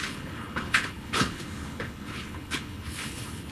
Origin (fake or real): fake